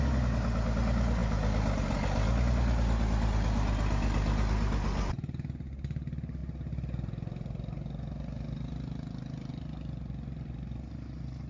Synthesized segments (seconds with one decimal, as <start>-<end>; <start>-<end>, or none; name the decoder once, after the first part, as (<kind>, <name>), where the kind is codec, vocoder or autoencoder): none